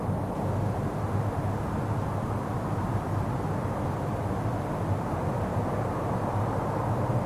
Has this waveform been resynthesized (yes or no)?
no